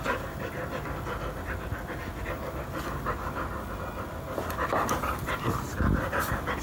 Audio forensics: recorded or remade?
recorded